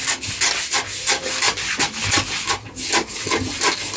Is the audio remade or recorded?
recorded